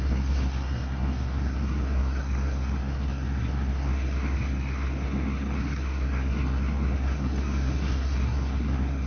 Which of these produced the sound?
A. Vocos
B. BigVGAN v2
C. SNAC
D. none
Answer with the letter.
C